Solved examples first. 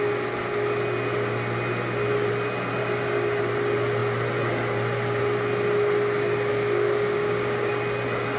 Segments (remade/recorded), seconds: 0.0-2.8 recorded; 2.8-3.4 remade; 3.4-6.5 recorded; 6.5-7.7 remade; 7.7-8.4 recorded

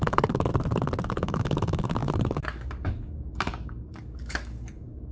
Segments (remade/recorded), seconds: 0.0-0.5 remade; 0.5-1.1 recorded; 1.1-5.1 remade

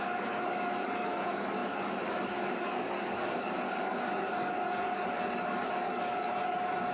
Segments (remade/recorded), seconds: 0.0-6.9 remade